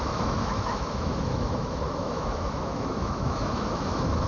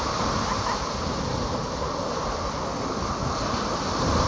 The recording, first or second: second